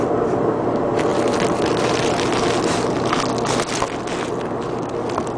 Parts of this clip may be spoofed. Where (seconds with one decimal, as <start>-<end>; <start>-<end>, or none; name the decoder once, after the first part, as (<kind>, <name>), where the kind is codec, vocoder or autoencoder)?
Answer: none